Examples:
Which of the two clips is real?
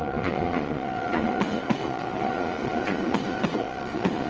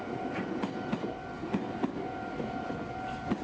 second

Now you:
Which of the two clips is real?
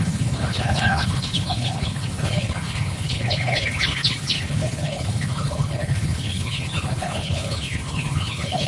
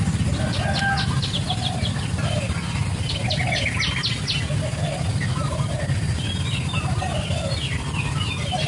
second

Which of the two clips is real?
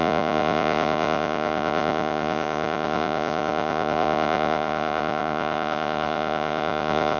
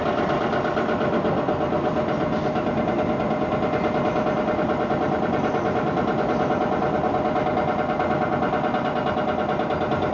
second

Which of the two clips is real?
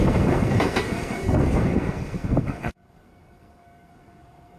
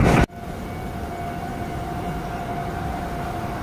second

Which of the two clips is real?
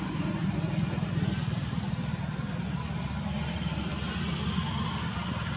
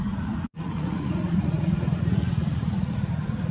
first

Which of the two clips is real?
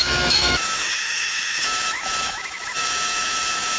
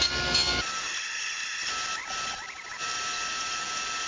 second